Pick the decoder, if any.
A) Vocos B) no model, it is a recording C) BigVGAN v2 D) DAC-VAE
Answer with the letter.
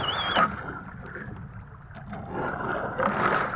B